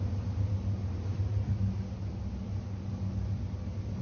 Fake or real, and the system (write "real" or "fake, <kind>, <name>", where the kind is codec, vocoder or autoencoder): real